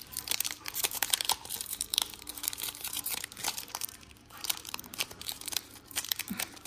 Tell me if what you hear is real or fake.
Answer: fake